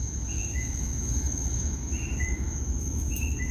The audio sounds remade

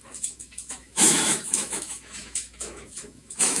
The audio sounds remade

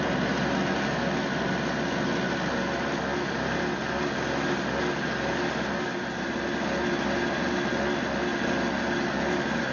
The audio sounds recorded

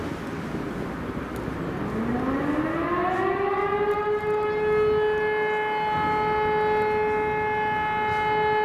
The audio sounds recorded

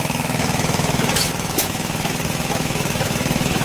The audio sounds remade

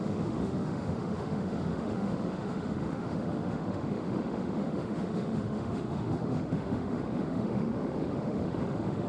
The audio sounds remade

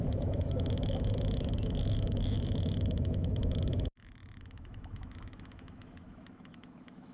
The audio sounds remade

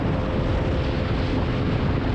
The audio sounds recorded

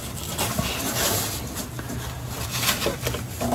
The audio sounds recorded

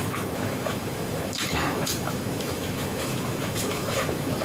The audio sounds remade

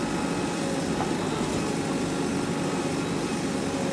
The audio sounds recorded